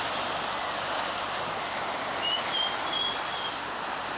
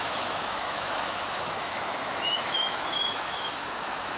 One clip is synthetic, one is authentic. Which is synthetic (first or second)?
second